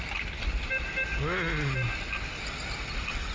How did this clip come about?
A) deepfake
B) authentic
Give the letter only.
B